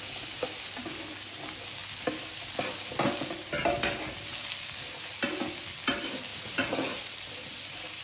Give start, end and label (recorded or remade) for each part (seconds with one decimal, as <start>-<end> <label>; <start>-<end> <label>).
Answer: 0.0-6.3 recorded; 6.3-7.0 remade; 7.0-8.0 recorded